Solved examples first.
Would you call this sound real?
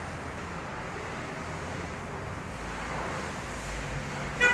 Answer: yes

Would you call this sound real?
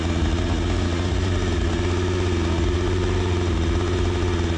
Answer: yes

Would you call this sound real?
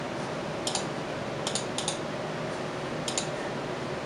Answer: yes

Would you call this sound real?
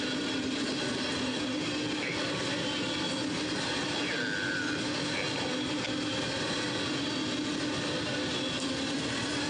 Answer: yes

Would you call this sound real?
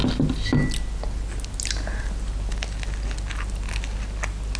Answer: yes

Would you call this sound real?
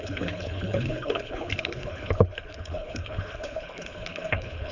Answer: no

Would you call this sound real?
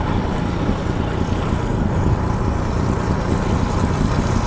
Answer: yes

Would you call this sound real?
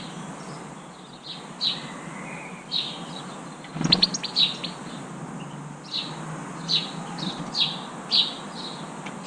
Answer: yes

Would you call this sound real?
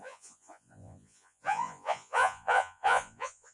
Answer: no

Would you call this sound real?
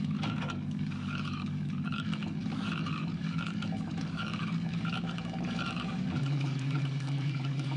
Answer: no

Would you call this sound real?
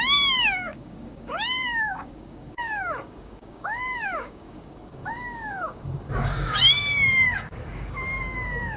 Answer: no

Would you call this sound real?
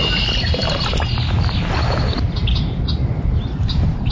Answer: yes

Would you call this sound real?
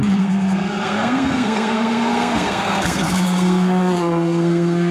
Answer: no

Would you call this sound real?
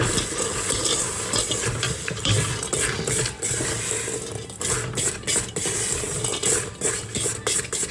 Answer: yes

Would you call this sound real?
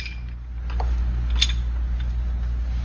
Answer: yes